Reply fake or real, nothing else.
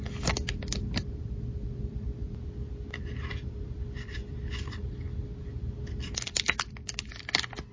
real